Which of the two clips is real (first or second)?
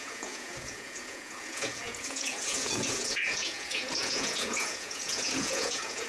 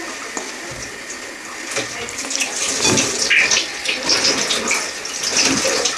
second